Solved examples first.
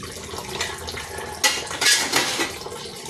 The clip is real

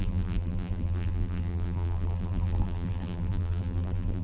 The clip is fake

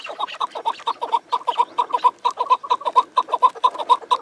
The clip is real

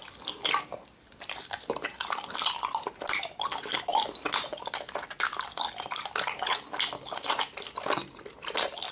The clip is real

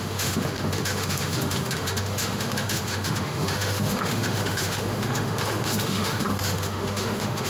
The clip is fake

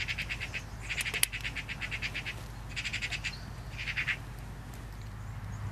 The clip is real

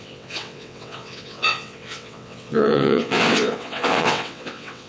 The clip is fake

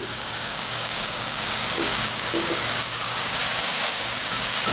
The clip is fake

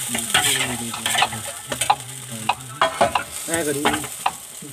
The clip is real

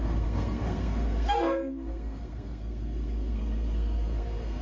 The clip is fake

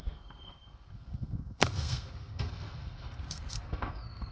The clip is fake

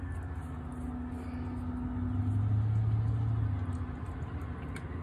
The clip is real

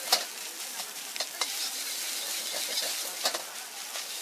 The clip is real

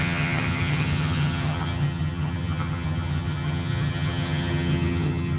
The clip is fake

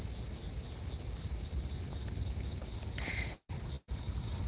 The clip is real